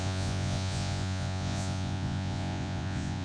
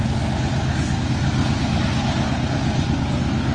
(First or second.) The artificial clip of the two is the first